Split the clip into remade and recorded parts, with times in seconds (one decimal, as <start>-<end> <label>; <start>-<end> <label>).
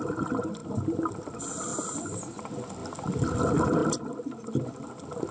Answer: 0.0-0.6 recorded; 0.6-1.2 remade; 1.2-1.7 recorded; 1.7-2.4 remade; 2.4-5.3 recorded